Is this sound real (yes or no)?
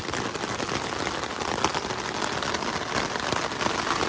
yes